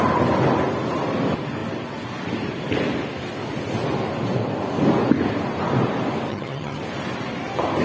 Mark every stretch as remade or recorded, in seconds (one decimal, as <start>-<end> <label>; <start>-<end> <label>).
0.0-6.3 recorded; 6.3-6.8 remade; 6.8-7.8 recorded